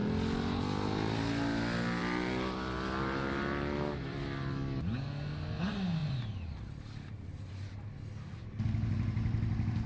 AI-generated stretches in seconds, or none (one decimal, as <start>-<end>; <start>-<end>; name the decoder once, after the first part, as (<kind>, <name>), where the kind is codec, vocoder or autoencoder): none